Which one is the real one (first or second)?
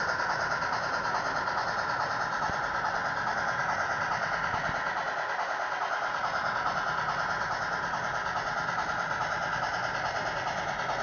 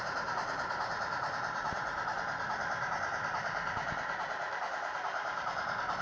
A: first